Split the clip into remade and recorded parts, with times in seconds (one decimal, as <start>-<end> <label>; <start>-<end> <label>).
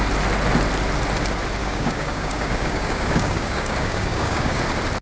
0.0-1.6 recorded; 1.6-4.6 remade; 4.6-5.0 recorded